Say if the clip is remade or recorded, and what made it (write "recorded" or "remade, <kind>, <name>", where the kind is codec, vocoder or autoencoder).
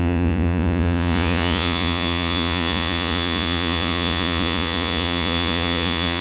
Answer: remade, vocoder, Vocos